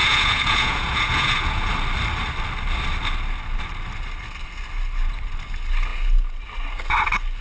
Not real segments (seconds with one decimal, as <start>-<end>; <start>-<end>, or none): 0.0-1.7